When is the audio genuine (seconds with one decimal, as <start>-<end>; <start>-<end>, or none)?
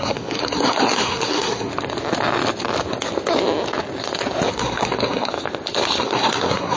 1.7-4.5; 5.3-6.0